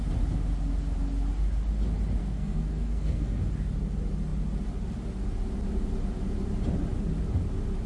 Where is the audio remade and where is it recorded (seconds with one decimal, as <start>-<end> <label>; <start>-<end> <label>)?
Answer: 0.0-2.2 recorded; 2.2-3.4 remade; 3.4-7.9 recorded